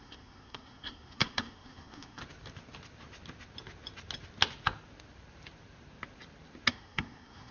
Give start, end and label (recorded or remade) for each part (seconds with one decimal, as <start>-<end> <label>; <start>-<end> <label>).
0.0-2.2 remade; 2.2-6.7 recorded; 6.7-7.5 remade